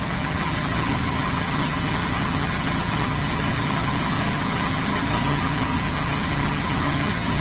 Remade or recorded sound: remade